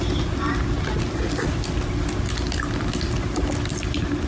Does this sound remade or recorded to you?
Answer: recorded